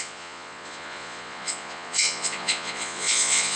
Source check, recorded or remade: remade